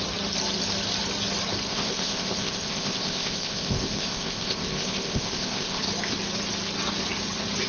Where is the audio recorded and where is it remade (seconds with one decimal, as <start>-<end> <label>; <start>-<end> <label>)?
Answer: 0.0-1.7 recorded; 1.7-5.8 remade; 5.8-7.7 recorded